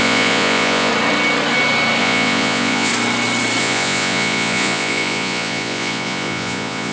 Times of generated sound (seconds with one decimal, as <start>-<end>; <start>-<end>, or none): 0.0-0.9; 2.0-2.9; 3.6-6.9